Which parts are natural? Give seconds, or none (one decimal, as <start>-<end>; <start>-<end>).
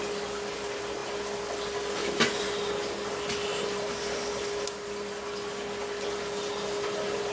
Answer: 0.0-7.3